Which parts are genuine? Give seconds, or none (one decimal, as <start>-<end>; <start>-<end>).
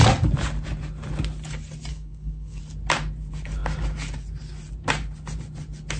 0.0-1.9; 2.6-6.0